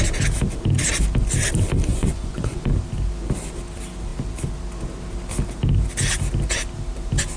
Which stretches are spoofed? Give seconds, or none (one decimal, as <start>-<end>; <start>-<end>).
1.9-2.7